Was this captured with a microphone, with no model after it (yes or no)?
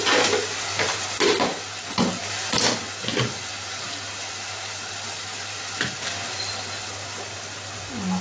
yes